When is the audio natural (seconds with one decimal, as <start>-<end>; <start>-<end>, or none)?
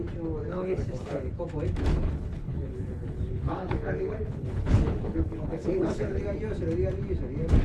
0.0-0.5; 1.3-1.9; 6.2-7.6